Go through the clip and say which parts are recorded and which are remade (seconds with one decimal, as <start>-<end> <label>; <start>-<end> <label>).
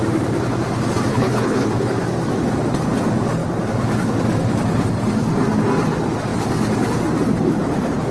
0.0-1.1 recorded; 1.1-1.7 remade; 1.7-8.1 recorded